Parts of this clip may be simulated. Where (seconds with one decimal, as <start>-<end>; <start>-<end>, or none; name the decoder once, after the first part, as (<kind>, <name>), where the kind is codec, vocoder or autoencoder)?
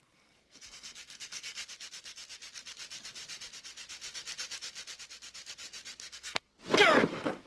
0.0-1.6 (codec, SNAC); 6.1-6.5; 7.1-7.5